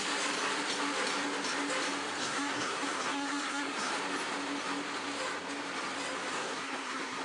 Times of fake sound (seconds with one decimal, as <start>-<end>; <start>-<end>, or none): 2.2-3.9; 6.3-7.2